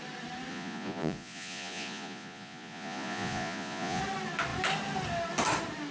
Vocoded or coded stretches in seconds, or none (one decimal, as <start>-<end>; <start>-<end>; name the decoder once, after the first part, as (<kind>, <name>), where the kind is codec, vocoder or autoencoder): 0.5-4.0 (vocoder, Vocos)